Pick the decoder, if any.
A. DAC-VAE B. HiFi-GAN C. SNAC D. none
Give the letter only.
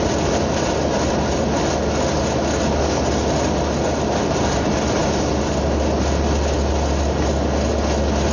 D